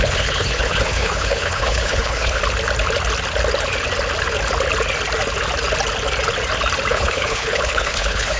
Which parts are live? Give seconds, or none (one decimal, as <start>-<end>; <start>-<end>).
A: 2.4-6.9